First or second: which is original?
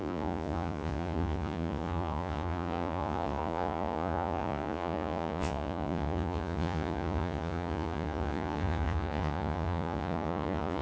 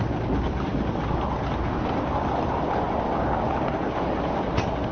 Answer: second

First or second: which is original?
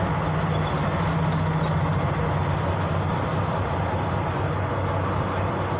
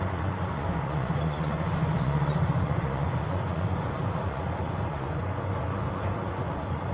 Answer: first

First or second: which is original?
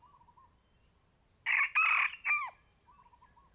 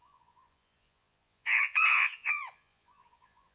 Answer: first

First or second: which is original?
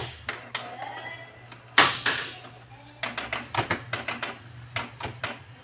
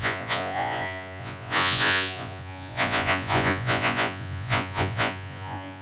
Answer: first